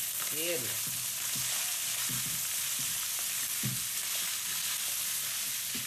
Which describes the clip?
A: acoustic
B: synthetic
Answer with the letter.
A